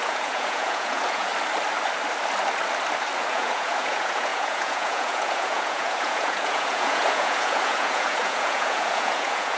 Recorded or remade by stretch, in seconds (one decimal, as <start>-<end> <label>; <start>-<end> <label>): 0.0-1.3 remade; 1.3-3.3 recorded; 3.3-9.6 remade